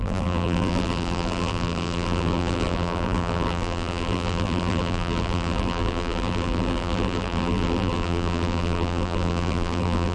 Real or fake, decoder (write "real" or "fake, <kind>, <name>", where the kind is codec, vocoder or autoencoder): fake, vocoder, BigVGAN v2